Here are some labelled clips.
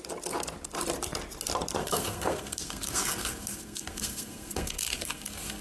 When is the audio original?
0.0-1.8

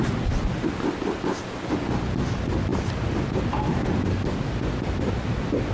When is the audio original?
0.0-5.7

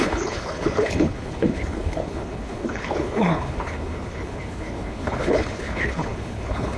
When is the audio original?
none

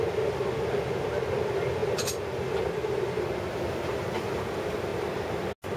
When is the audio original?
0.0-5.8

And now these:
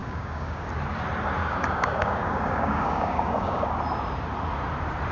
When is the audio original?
0.7-1.4; 3.6-5.1